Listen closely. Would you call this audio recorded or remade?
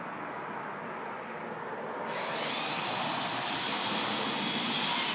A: recorded